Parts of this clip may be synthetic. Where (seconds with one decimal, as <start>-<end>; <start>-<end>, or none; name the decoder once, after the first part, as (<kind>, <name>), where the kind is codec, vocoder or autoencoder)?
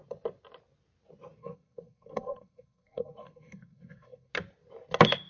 1.4-4.3 (codec, SNAC)